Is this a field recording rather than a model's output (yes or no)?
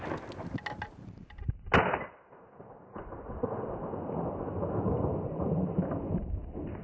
yes